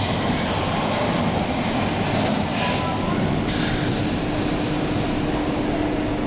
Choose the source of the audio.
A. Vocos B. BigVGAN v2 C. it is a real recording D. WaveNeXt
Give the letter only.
C